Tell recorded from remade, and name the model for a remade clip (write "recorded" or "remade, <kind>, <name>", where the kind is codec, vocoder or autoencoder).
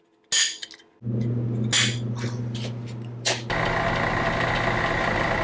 recorded